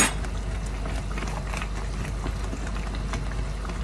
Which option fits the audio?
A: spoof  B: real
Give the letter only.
B